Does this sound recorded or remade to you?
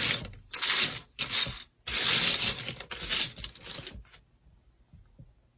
recorded